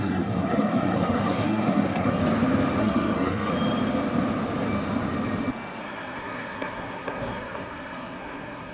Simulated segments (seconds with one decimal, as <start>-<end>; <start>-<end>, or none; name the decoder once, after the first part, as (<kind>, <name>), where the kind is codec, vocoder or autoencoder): 0.0-2.2 (codec, SNAC); 2.8-3.5; 5.8-8.7